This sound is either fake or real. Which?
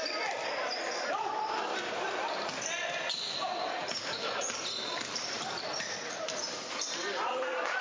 fake